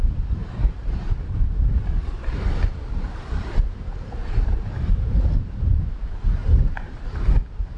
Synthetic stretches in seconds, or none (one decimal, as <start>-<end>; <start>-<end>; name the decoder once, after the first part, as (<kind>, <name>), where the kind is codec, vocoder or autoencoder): 0.4-5.1 (vocoder, BigVGAN v2); 6.4-7.0